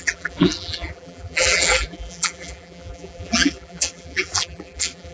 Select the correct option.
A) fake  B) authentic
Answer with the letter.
A